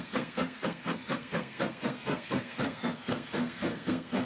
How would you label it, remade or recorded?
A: remade